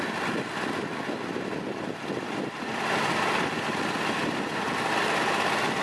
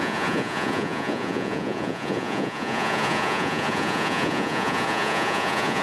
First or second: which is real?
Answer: first